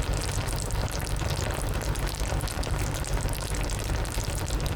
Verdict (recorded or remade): recorded